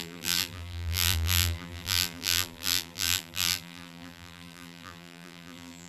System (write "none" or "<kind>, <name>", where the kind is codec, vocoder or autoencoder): vocoder, BigVGAN v2